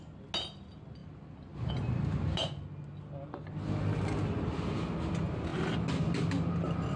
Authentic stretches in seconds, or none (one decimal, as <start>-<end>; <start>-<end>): 0.0-7.0